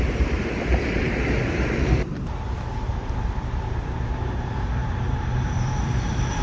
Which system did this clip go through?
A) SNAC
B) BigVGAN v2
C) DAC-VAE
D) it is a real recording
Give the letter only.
B